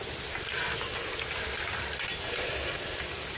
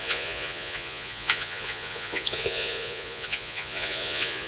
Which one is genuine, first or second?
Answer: first